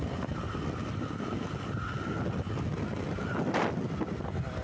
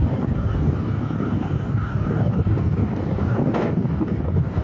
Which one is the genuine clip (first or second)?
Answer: first